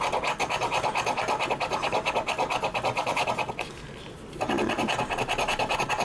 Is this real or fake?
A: real